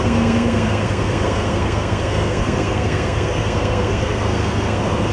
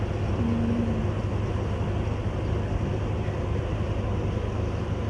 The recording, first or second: second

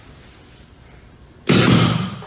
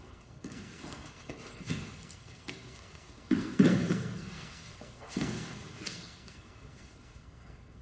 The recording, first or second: first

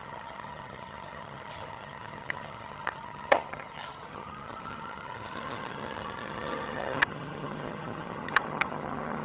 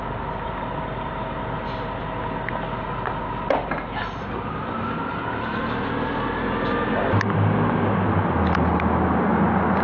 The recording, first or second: second